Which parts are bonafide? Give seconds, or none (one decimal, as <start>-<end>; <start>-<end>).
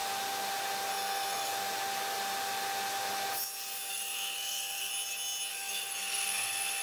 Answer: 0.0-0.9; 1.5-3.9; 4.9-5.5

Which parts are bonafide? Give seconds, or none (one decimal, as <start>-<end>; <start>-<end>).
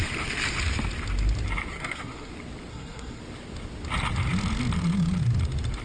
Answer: 0.0-1.7; 2.3-2.7; 3.2-5.8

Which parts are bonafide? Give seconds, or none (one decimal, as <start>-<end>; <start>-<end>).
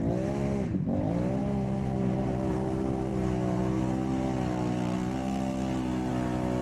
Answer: 0.0-6.6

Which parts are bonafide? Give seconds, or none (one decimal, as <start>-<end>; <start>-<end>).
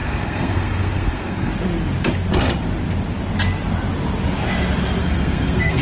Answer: 1.5-5.0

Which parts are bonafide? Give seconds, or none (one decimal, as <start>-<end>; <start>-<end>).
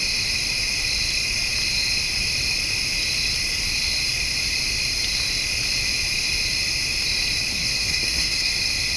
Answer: 0.0-7.5; 8.5-9.0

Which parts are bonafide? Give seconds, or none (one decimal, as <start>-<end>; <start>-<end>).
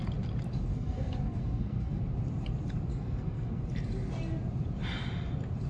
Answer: 0.0-0.7; 2.0-2.9; 3.6-5.7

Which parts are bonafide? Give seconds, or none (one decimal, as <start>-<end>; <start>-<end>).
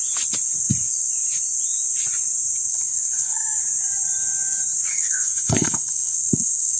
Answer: 0.0-2.7; 3.6-4.9